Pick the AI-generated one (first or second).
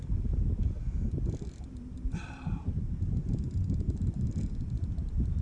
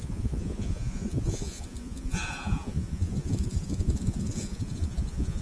second